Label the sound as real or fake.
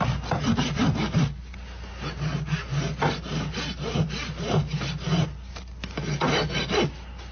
real